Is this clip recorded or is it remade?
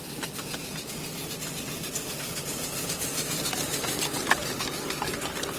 recorded